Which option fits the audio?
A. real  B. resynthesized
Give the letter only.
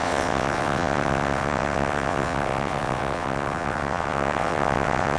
B